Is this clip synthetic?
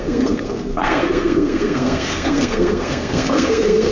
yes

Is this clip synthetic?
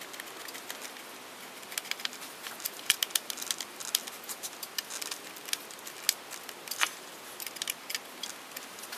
no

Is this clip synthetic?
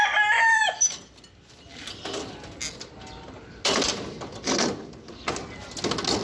no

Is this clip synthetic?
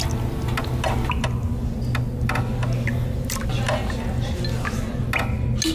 no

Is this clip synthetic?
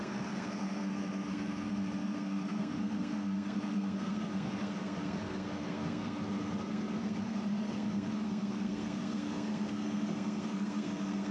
yes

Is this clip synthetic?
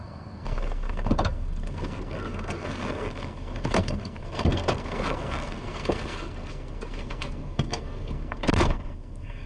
yes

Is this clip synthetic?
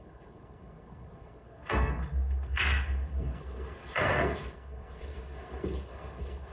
yes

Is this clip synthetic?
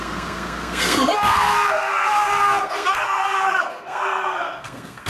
yes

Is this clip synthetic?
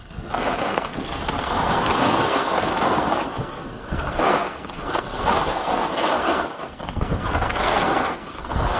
yes